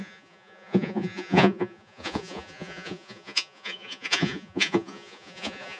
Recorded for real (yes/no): no